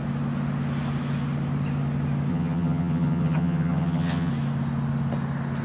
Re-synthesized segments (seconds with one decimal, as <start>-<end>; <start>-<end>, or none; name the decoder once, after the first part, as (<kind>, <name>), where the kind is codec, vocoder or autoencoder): 2.3-4.3 (vocoder, HiFi-GAN)